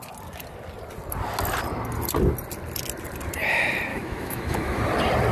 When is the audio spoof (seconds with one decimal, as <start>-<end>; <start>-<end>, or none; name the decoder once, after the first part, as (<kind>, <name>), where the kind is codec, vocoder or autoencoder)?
3.9-4.8 (autoencoder, DAC-VAE)